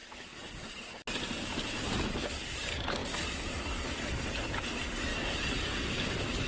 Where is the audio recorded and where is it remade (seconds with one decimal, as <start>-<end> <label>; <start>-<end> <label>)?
0.0-6.5 recorded